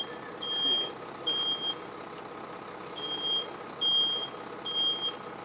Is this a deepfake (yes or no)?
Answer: no